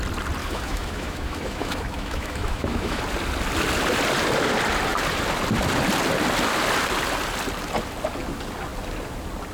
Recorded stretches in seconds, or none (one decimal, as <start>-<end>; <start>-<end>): 0.0-0.4; 3.0-9.5